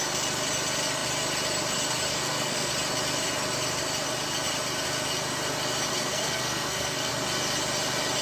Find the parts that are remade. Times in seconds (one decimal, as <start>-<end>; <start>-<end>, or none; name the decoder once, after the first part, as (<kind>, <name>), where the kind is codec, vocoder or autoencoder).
2.1-2.7 (codec, SNAC); 5.9-7.1